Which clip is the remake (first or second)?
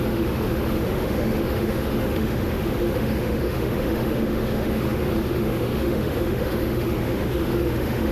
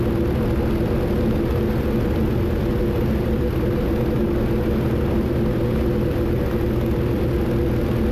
first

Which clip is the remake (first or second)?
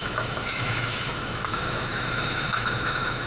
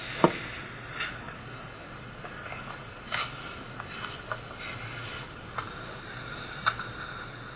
first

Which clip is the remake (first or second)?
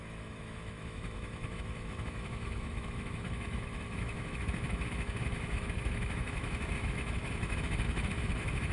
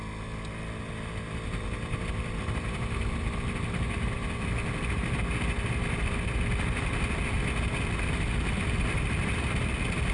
first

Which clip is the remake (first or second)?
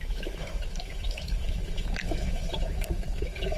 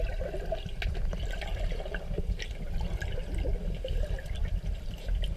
first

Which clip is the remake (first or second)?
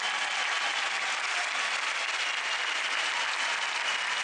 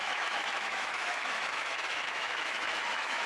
second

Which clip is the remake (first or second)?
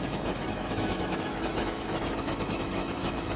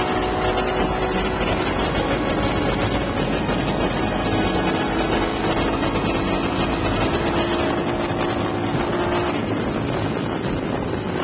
first